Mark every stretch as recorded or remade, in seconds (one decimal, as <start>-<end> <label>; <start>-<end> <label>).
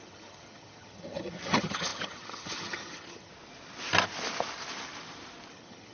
0.0-3.3 remade; 3.3-5.5 recorded; 5.5-5.9 remade